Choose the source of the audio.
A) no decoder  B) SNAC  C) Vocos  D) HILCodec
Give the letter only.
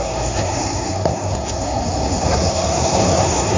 B